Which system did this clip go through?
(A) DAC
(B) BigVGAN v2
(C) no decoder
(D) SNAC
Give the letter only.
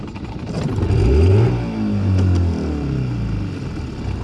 C